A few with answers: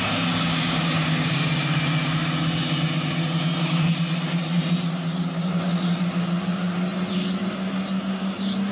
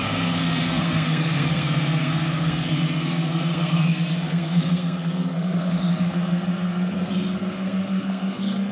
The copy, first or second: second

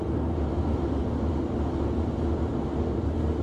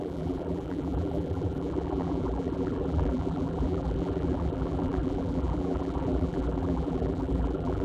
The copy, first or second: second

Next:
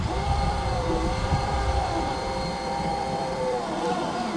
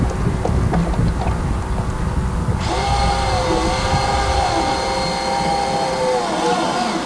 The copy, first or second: first